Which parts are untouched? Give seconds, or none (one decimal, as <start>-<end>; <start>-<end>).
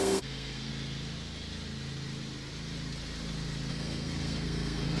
0.7-3.7